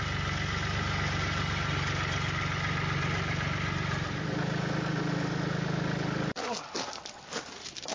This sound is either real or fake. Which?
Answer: real